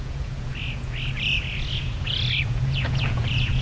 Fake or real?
fake